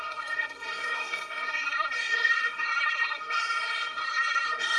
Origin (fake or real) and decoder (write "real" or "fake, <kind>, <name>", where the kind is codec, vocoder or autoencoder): fake, codec, SNAC